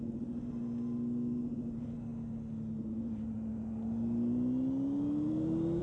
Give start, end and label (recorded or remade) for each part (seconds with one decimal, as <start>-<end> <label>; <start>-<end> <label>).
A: 0.0-5.8 recorded

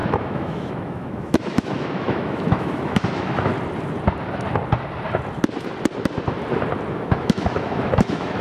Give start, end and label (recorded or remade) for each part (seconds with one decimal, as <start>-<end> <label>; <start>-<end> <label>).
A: 0.0-3.5 remade; 3.5-6.9 recorded; 6.9-8.4 remade

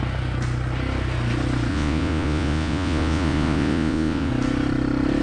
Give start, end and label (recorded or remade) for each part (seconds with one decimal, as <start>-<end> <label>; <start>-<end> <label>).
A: 0.0-1.7 recorded; 1.7-4.3 remade; 4.3-5.2 recorded